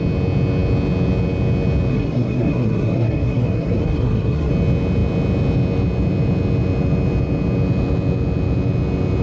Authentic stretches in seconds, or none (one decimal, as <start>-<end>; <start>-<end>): 0.0-1.9; 4.5-9.2